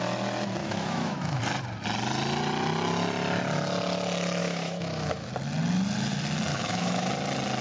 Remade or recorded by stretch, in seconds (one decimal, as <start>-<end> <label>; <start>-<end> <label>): 0.0-0.6 recorded; 0.6-1.4 remade; 1.4-4.4 recorded; 4.4-5.3 remade; 5.3-6.5 recorded; 6.5-7.1 remade; 7.1-7.6 recorded